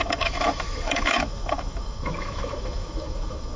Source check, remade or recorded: remade